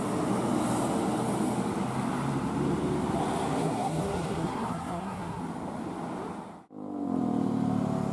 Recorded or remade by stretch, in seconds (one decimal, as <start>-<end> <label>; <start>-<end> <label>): 0.0-3.5 recorded; 3.5-5.4 remade; 5.4-8.1 recorded